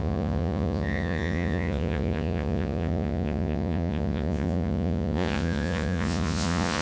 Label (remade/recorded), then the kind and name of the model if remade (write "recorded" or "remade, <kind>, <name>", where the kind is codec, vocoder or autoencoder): remade, vocoder, Vocos